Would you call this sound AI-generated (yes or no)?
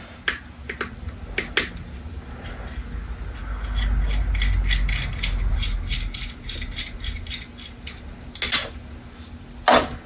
no